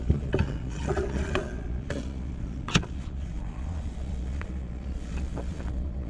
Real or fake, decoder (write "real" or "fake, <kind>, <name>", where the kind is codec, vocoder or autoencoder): fake, vocoder, Vocos